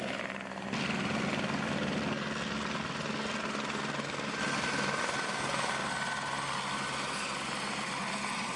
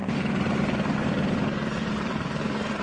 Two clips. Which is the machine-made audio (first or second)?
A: second